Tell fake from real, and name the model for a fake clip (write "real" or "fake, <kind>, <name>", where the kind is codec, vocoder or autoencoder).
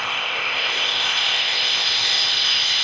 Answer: fake, codec, ZipCodec